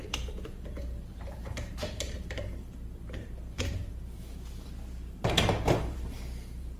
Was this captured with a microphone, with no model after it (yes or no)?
no